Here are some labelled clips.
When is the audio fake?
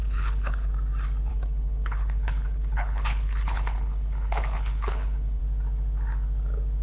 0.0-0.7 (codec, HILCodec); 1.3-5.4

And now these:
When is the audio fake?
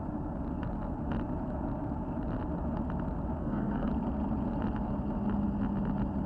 3.4-3.9 (codec, SNAC)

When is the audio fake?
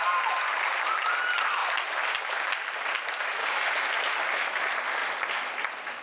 3.4-3.9 (codec, DAC)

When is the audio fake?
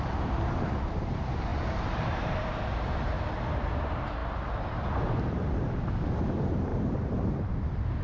0.0-4.2 (vocoder, BigVGAN v2); 5.3-8.0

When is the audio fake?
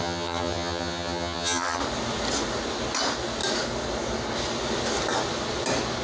0.0-1.8 (vocoder, HiFi-GAN)